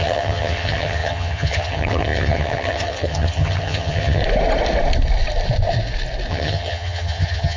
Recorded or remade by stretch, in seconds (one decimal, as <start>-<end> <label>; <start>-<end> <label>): 0.0-4.2 remade; 4.2-6.3 recorded; 6.3-7.6 remade